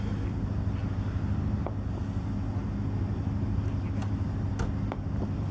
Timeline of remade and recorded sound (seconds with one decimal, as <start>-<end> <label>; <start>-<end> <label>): 0.0-5.5 recorded

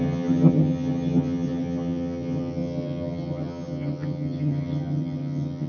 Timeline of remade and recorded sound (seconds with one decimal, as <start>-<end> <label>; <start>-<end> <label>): 0.0-5.7 remade

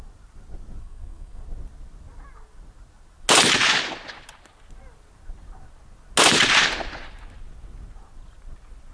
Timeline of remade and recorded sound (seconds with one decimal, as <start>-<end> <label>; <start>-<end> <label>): 0.0-0.8 recorded; 0.8-1.4 remade; 1.4-8.9 recorded

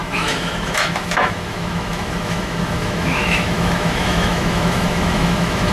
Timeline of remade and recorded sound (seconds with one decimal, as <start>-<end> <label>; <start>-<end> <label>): 0.0-5.7 remade

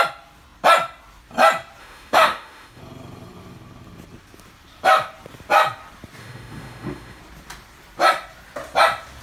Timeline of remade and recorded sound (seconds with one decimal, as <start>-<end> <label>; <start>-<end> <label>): 0.0-1.8 recorded; 1.8-2.8 remade; 2.8-6.2 recorded; 6.2-7.2 remade; 7.2-9.2 recorded